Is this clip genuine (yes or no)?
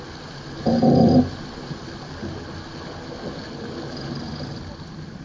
yes